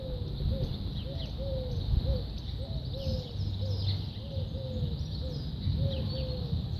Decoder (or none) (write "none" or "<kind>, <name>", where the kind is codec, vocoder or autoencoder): none